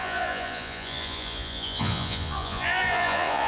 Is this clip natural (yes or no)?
no